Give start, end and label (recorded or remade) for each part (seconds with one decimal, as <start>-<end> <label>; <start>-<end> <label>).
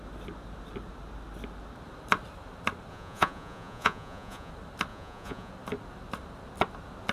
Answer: 0.0-2.9 recorded; 2.9-4.5 remade; 4.5-4.9 recorded; 4.9-5.5 remade; 5.5-7.1 recorded